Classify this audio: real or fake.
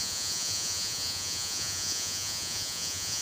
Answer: fake